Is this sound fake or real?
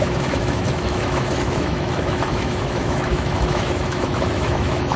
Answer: fake